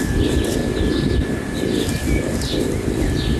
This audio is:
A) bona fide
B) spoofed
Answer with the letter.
A